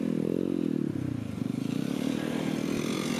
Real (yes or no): yes